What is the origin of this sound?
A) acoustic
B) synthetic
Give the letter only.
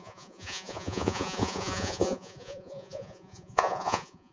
B